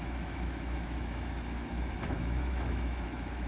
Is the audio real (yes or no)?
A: no